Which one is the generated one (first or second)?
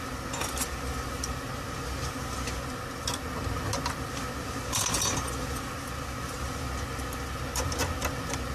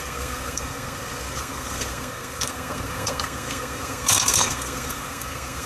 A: second